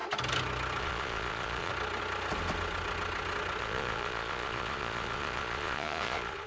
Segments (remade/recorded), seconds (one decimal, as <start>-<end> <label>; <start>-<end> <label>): 0.0-0.8 recorded; 0.8-1.7 remade; 1.7-3.6 recorded; 3.6-6.5 remade